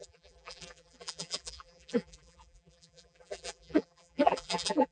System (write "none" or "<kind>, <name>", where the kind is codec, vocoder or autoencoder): vocoder, BigVGAN v2